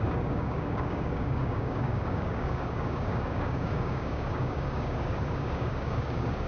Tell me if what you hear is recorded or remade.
remade